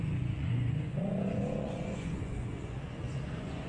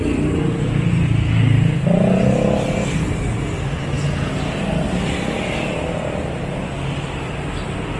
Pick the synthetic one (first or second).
first